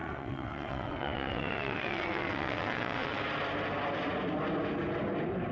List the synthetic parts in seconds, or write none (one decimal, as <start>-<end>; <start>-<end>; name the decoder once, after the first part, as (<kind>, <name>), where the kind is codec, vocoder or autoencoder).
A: 0.0-3.2 (vocoder, WaveNeXt)